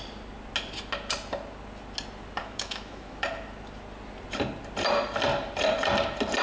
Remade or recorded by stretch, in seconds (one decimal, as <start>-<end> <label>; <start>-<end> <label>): 0.0-2.4 recorded; 2.4-3.1 remade; 3.1-6.4 recorded